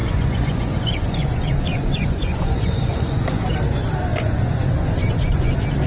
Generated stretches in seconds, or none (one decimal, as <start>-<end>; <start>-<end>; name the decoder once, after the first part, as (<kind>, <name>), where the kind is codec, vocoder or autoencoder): 0.0-3.5 (vocoder, Vocos); 4.1-5.5